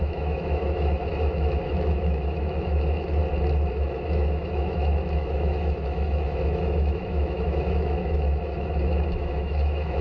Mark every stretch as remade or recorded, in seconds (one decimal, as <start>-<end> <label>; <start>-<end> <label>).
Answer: 0.0-3.2 remade; 3.2-3.7 recorded; 3.7-10.0 remade